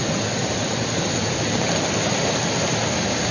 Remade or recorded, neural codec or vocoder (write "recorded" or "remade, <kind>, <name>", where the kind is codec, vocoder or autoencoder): recorded